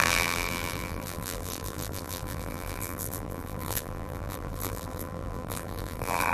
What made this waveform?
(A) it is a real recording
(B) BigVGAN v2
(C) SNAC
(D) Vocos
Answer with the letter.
B